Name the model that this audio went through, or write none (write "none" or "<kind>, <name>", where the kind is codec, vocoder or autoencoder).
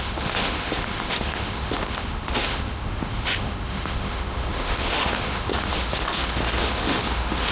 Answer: autoencoder, DAC-VAE